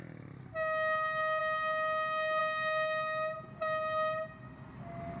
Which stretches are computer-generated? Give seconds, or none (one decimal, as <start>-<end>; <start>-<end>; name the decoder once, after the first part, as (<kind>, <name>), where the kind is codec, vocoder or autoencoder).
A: none